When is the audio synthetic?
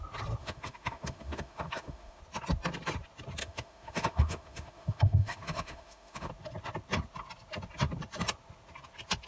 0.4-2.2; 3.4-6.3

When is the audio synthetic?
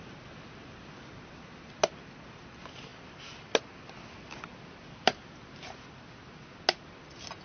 none